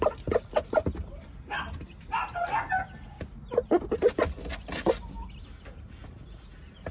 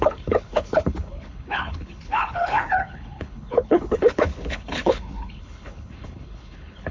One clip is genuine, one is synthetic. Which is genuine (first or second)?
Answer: first